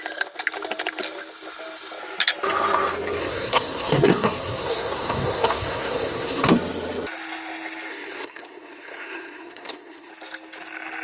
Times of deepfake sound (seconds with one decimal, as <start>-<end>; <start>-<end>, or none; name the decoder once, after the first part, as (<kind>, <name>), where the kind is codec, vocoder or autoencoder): 3.2-6.5 (codec, SNAC); 7.9-10.1